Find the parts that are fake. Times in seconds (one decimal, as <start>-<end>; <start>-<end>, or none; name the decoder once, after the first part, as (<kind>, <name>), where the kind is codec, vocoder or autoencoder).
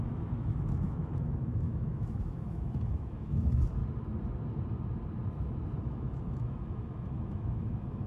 0.0-3.8 (autoencoder, DAC-VAE); 5.8-8.1